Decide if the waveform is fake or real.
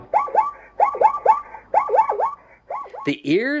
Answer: real